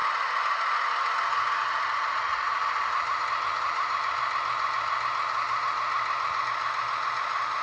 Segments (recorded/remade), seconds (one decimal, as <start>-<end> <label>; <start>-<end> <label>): 0.0-7.6 recorded